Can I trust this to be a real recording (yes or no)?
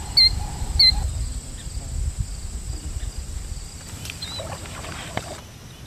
yes